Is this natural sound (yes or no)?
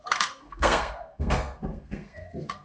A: no